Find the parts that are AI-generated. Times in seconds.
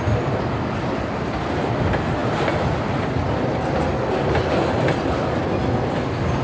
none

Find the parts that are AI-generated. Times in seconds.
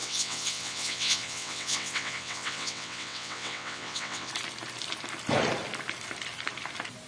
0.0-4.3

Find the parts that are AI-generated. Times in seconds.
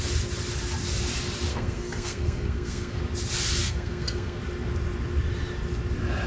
1.5-3.0; 3.6-4.4